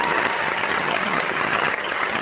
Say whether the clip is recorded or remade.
remade